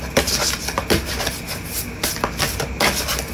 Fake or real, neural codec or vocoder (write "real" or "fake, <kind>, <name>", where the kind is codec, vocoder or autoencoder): real